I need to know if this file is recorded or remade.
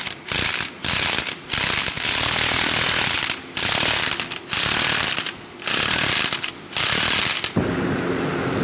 recorded